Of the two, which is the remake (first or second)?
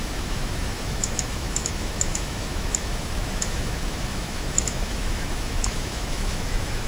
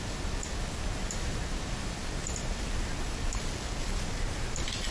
first